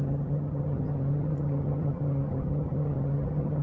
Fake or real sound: fake